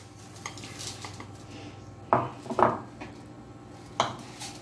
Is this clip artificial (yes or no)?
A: no